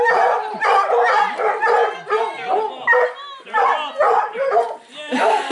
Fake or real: real